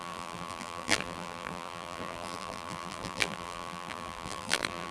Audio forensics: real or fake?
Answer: fake